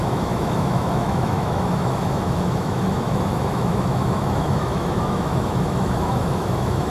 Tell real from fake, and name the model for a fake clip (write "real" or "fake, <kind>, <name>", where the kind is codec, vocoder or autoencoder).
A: fake, autoencoder, DAC-VAE